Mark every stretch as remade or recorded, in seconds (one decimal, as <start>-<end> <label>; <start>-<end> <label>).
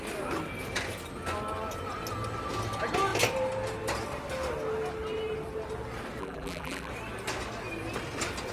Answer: 0.0-6.2 recorded; 6.2-6.9 remade; 6.9-8.5 recorded